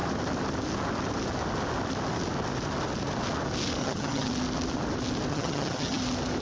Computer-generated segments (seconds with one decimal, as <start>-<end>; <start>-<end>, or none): 3.8-4.3; 5.3-6.0